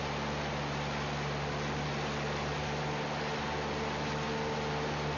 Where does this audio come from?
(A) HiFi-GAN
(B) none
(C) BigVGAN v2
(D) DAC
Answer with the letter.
B